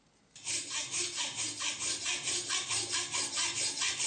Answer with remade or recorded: recorded